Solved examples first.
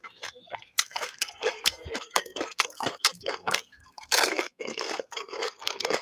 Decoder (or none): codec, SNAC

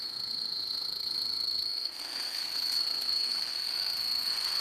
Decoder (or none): codec, SNAC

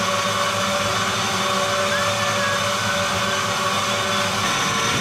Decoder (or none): none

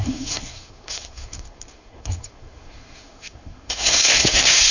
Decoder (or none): codec, SNAC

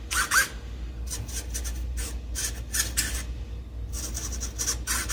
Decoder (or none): none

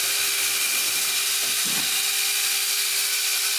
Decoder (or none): none